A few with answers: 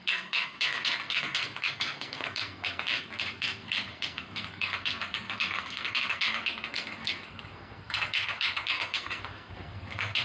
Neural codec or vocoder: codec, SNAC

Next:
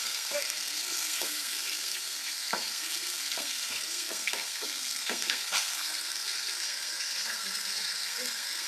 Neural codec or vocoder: codec, SNAC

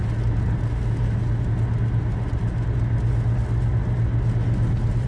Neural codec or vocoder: none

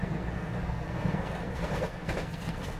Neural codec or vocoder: codec, SNAC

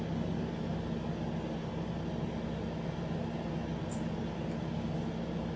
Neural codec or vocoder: none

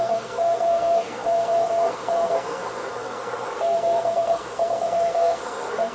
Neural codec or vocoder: codec, SNAC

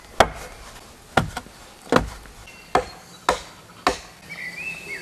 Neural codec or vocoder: none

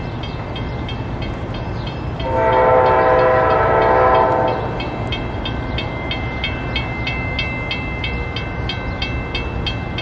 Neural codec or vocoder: none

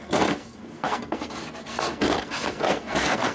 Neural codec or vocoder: codec, SNAC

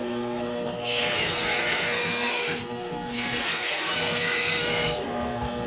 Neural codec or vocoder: codec, SNAC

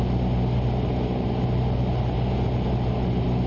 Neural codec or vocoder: none